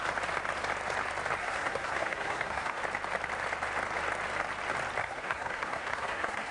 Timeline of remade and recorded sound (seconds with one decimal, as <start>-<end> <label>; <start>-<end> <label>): 0.0-1.4 recorded; 1.4-2.8 remade; 2.8-5.0 recorded; 5.0-6.5 remade